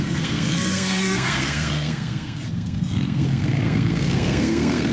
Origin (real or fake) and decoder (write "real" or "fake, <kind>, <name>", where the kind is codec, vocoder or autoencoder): fake, codec, SNAC